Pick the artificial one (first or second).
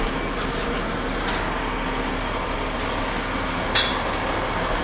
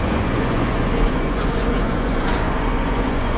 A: second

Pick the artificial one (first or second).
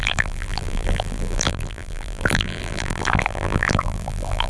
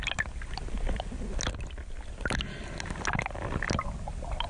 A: first